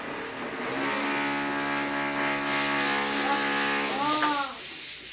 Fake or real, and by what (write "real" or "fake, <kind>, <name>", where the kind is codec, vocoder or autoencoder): real